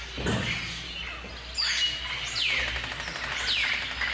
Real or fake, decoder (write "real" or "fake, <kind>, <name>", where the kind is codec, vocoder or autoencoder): real